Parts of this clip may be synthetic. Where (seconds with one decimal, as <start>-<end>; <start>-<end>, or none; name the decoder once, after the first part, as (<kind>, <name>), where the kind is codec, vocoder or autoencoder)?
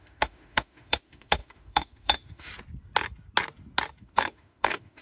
0.0-2.5 (autoencoder, DAC-VAE); 4.0-5.0